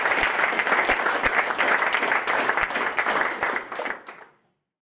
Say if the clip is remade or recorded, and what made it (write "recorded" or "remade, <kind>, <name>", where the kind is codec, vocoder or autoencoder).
recorded